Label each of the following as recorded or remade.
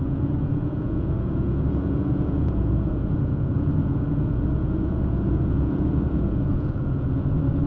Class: remade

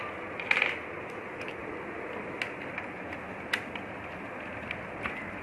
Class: recorded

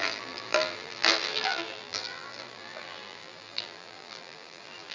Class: remade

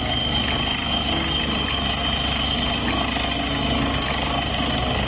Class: recorded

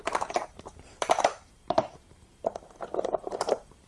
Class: remade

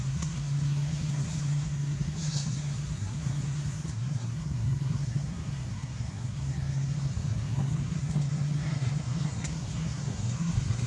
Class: remade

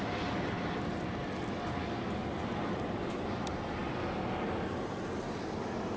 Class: recorded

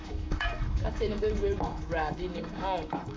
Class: remade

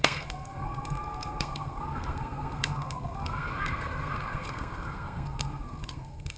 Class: remade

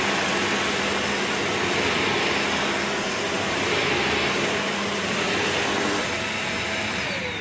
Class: recorded